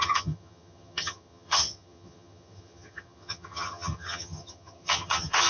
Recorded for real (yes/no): no